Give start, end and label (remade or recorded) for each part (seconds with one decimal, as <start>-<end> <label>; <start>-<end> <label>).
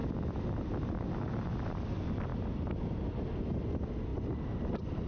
0.0-5.1 recorded